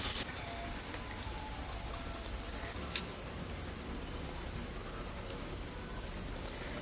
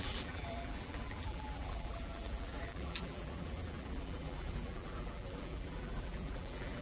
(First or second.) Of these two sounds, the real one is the first